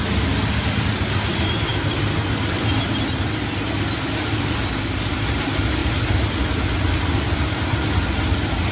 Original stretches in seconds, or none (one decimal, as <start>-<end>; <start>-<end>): 0.0-8.7